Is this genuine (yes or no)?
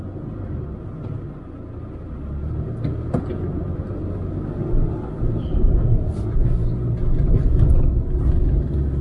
yes